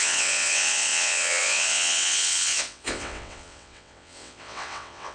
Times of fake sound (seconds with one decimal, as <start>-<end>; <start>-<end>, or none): 0.0-5.1